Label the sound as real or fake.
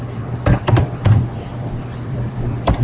fake